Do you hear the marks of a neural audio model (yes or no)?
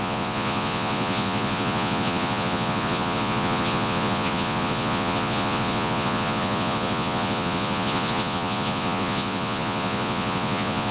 yes